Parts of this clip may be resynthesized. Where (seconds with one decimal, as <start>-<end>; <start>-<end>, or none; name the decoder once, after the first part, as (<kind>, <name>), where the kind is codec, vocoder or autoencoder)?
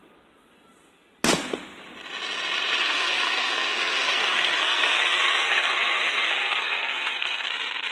2.8-7.5 (codec, SNAC)